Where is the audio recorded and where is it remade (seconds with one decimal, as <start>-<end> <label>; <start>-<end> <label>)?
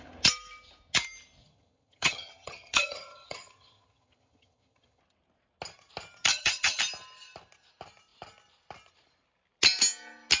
0.0-1.4 recorded; 1.4-5.0 remade; 5.0-6.3 recorded; 6.3-6.8 remade; 6.8-10.4 recorded